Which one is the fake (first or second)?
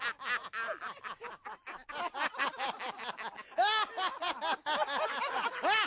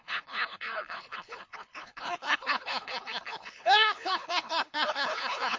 second